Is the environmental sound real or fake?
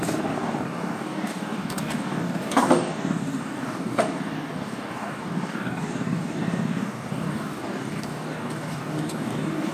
fake